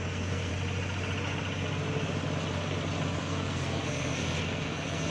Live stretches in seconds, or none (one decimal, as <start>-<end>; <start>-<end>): 0.5-3.2